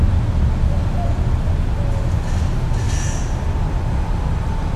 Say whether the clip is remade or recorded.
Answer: recorded